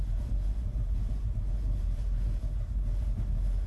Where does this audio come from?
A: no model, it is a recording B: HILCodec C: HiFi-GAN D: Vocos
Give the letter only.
A